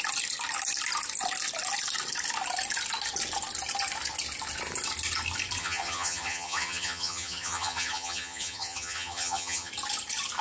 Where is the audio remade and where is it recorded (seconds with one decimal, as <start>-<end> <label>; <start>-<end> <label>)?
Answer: 0.0-5.6 recorded; 5.6-9.7 remade; 9.7-10.4 recorded